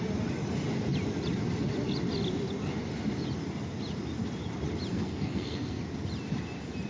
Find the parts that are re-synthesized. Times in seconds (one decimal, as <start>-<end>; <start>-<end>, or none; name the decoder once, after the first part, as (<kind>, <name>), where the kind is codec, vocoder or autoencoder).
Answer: 4.9-5.8 (codec, SNAC)